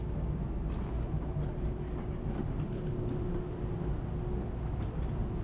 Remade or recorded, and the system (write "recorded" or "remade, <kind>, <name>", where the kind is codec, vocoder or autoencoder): recorded